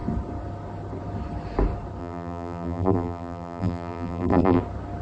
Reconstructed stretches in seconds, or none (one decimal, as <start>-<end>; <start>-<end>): 2.0-4.6